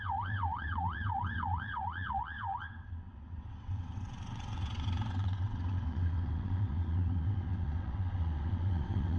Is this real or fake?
fake